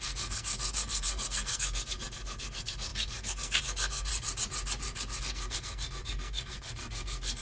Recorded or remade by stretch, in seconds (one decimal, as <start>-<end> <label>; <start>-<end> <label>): 0.0-4.1 remade; 4.1-5.2 recorded; 5.2-7.4 remade